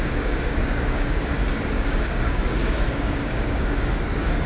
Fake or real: fake